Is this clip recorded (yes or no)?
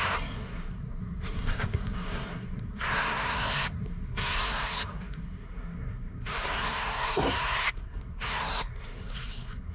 no